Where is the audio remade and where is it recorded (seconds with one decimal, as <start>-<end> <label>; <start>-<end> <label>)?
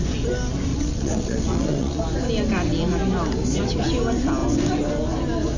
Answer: 0.0-0.7 recorded; 0.7-2.0 remade; 2.0-5.6 recorded